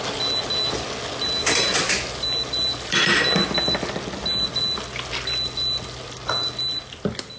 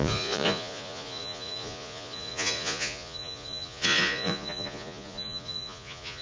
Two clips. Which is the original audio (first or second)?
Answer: first